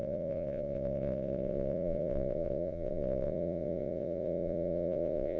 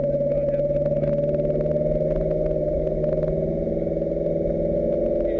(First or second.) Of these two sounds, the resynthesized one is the first